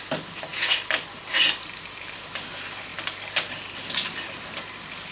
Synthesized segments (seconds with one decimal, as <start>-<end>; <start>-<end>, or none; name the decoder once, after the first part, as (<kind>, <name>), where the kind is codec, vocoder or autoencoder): 0.0-0.5 (vocoder, BigVGAN v2); 1.3-2.9